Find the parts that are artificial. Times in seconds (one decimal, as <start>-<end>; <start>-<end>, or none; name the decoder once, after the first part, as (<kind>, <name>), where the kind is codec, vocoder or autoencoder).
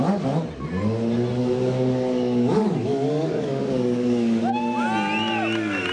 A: 1.4-4.4 (codec, DAC)